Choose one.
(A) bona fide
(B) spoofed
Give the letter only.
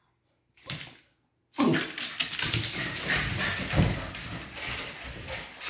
A